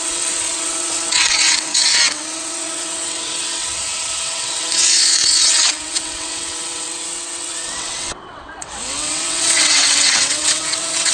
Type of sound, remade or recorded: remade